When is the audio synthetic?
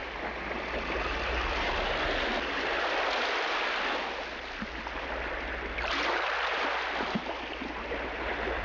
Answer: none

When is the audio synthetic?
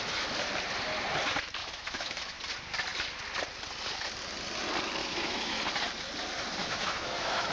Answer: 1.6-2.4 (autoencoder, DAC-VAE); 5.0-5.6; 6.6-7.5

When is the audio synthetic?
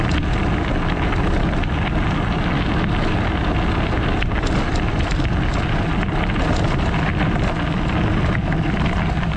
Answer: none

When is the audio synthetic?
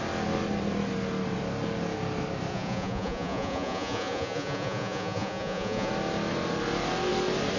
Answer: 2.5-5.9 (vocoder, Vocos)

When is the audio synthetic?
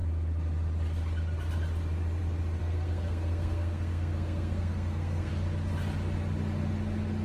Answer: 2.6-5.3 (codec, SNAC)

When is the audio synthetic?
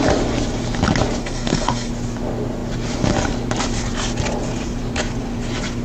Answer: 1.2-1.9 (codec, SNAC)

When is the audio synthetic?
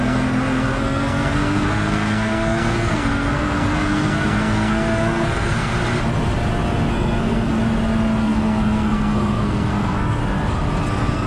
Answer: 0.0-5.7 (codec, SNAC); 6.9-7.6; 8.2-10.2; 10.9-11.3